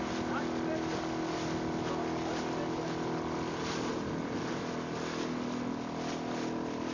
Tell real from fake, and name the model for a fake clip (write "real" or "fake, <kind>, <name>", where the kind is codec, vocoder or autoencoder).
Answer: real